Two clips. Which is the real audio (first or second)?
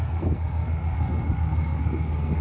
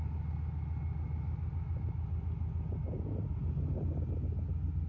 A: second